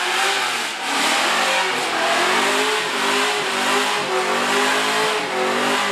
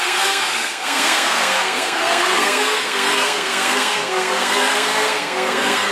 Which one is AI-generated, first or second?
second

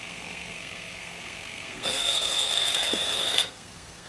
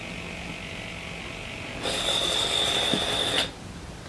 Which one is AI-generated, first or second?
first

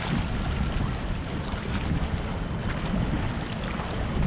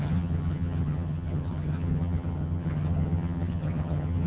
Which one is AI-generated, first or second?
second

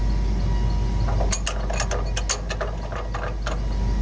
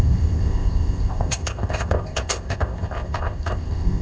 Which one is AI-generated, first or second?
second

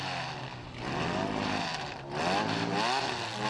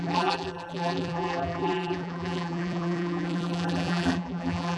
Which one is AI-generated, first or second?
second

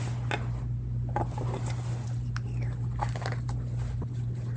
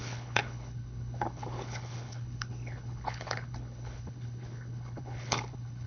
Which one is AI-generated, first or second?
second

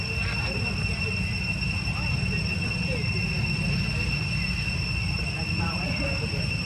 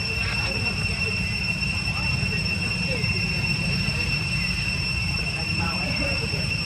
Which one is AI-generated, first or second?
second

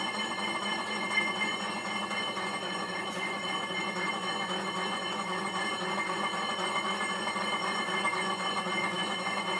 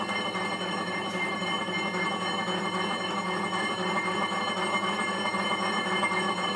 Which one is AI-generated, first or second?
first